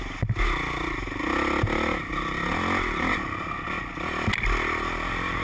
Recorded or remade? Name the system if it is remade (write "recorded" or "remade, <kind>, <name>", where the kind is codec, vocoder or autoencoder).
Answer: recorded